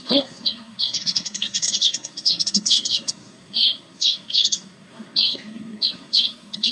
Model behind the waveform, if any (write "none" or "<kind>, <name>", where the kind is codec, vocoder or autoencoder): codec, SNAC